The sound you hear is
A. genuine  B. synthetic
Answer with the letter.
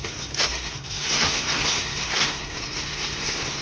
B